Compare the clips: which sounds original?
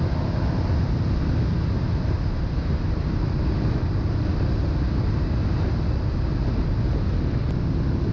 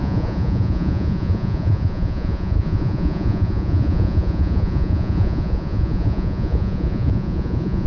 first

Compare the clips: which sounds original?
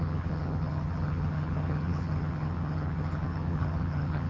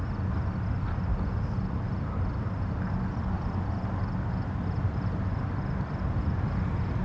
second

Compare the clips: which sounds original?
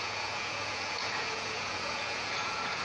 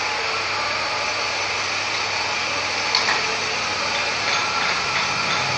second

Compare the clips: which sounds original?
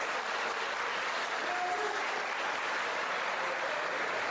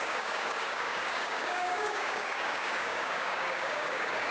first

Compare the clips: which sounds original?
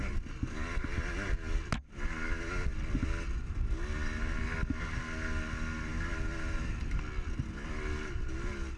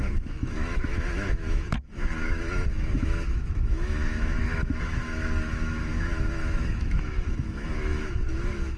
first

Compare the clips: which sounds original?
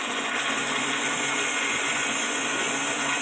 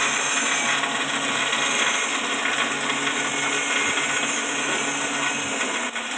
second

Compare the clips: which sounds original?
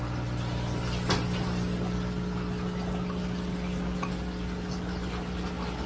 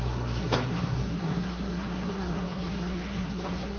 first